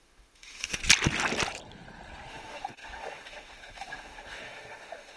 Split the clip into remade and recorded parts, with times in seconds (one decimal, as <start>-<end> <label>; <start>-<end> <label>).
0.0-0.8 remade; 0.8-2.3 recorded; 2.3-5.2 remade